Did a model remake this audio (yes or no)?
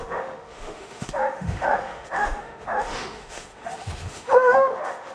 yes